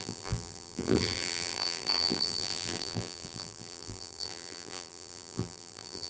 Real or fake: fake